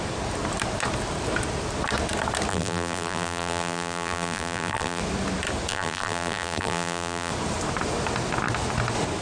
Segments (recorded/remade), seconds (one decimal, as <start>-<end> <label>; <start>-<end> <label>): 0.0-2.5 recorded; 2.5-5.0 remade; 5.0-5.7 recorded; 5.7-7.3 remade; 7.3-9.2 recorded